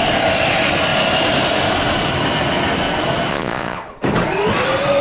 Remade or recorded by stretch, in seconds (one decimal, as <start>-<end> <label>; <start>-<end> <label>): 0.0-3.3 recorded; 3.3-3.8 remade; 3.8-5.0 recorded